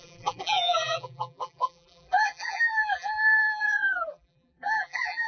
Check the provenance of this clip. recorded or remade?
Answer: remade